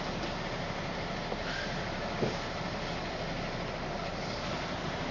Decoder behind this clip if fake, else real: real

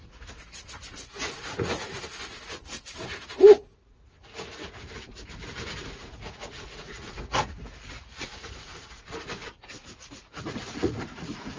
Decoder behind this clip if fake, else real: fake, vocoder, Vocos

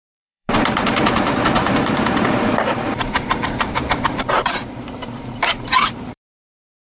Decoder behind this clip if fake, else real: fake, vocoder, BigVGAN v2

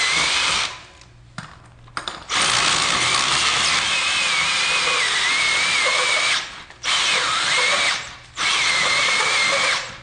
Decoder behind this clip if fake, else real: real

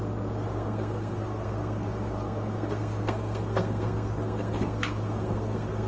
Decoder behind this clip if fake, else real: fake, codec, SNAC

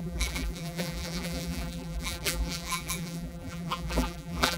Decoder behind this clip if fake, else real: fake, vocoder, BigVGAN v2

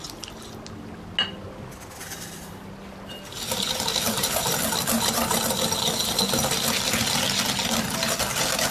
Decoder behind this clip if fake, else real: real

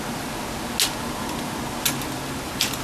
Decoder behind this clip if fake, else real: real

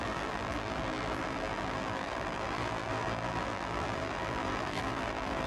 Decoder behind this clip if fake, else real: fake, vocoder, BigVGAN v2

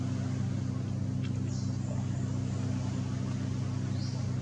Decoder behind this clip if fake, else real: real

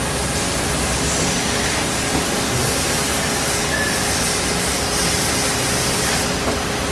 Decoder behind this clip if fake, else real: real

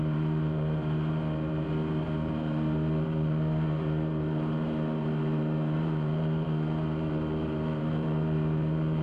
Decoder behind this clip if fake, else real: fake, vocoder, BigVGAN v2